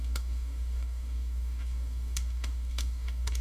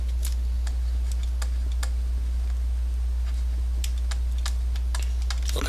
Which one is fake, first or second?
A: first